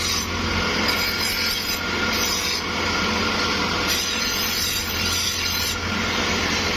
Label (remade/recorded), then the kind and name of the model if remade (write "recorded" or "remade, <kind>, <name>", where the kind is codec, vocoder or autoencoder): recorded